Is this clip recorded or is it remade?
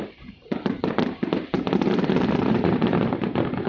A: remade